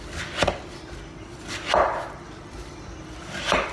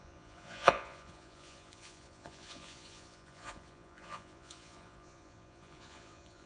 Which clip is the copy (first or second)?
second